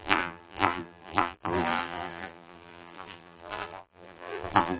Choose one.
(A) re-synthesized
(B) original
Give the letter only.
A